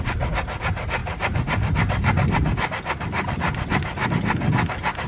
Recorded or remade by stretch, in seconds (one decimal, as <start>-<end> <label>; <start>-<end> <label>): 0.0-1.0 recorded; 1.0-4.1 remade; 4.1-5.1 recorded